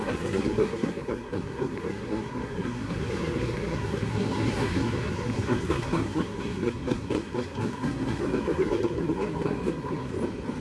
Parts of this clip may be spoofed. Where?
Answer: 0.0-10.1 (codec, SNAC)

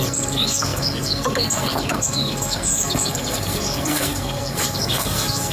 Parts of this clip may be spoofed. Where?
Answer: 0.0-5.5 (codec, SNAC)

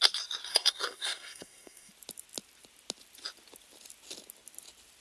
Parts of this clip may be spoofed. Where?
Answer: 0.5-1.9 (codec, SNAC)

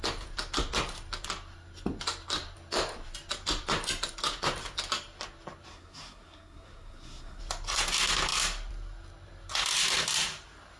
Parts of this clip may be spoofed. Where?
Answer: 5.7-7.4 (codec, SNAC)

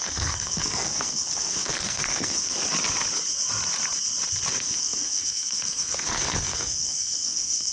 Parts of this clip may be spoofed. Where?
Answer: 0.0-2.6 (codec, SNAC); 4.5-7.7

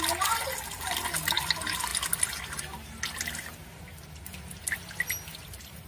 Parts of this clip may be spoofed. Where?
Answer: none